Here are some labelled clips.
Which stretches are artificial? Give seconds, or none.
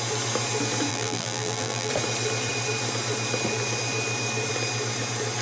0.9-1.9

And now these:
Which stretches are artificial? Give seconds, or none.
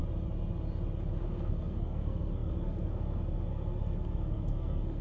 1.2-5.0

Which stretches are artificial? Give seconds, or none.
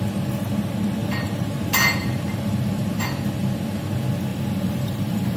1.0-2.9; 4.3-5.4